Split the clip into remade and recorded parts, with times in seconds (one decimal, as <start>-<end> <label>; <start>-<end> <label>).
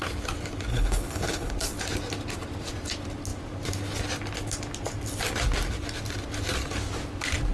0.0-0.7 recorded; 0.7-1.5 remade; 1.5-7.5 recorded